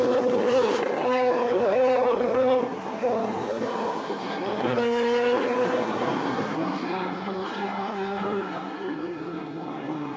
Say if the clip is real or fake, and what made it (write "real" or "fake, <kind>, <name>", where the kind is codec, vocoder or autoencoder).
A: fake, codec, SNAC